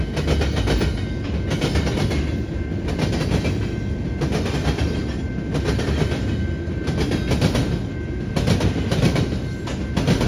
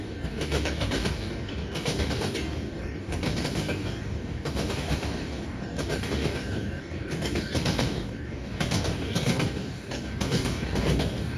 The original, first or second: first